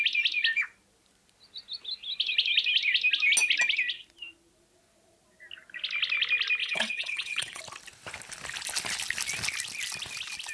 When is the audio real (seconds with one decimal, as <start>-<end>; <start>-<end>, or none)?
0.0-6.6; 7.6-10.5

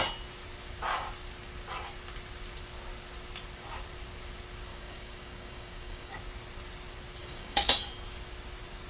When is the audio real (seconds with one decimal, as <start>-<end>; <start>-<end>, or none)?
0.0-4.7; 6.1-7.2; 7.7-8.9

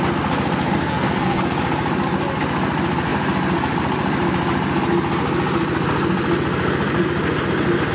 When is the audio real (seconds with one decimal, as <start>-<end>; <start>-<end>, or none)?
0.0-0.8; 1.4-7.9